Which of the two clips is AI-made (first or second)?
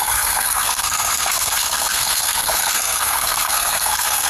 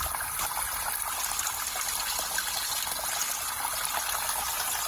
first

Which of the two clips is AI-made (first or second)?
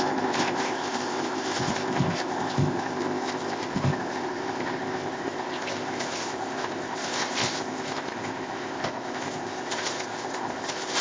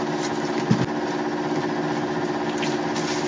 first